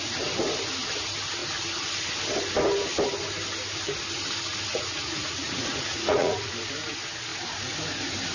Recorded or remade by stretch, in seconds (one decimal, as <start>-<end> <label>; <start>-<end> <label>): 0.0-4.7 recorded; 4.7-6.5 remade; 6.5-8.3 recorded